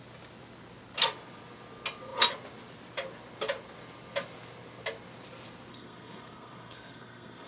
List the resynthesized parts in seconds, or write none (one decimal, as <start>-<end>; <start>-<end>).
5.7-7.5